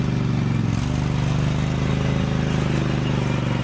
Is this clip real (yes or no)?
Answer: yes